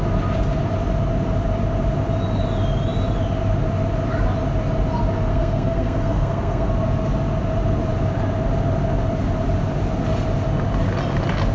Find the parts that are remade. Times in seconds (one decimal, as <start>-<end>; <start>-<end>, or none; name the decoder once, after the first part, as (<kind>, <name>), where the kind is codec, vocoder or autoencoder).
5.3-6.7 (codec, SNAC)